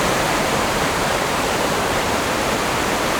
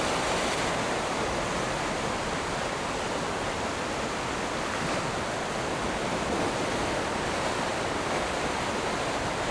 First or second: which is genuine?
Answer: second